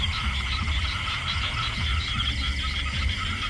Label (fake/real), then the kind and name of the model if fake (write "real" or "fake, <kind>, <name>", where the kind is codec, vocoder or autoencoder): real